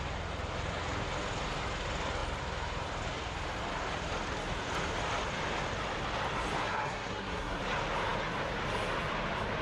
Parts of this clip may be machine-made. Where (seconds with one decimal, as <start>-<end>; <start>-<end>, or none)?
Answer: 6.6-7.6